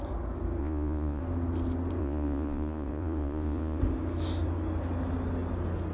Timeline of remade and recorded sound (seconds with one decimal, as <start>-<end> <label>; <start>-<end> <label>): 0.0-0.6 recorded; 0.6-1.2 remade; 1.2-2.0 recorded; 2.0-3.8 remade; 3.8-5.9 recorded